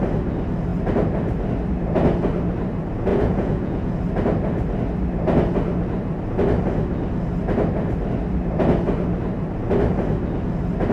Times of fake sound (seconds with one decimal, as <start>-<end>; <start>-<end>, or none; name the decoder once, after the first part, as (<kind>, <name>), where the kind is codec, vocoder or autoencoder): 3.1-4.0 (vocoder, Vocos)